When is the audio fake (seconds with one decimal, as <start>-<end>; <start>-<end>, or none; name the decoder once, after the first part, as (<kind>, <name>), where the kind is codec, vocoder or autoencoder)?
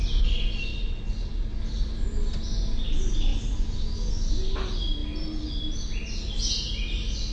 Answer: 0.7-1.6 (vocoder, WaveNeXt)